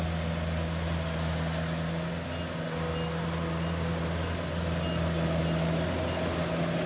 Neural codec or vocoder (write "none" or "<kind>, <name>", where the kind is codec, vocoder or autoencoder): none